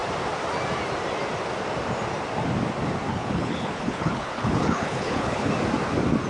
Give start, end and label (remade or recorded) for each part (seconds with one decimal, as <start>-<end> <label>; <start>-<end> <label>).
0.0-3.1 recorded; 3.1-5.5 remade; 5.5-6.3 recorded